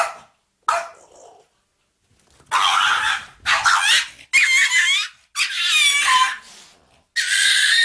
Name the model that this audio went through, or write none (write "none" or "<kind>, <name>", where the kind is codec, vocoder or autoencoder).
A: none